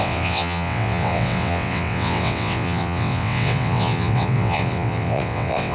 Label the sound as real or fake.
fake